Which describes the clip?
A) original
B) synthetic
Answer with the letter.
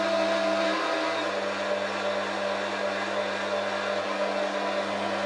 A